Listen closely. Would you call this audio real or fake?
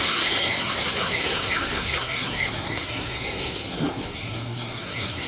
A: fake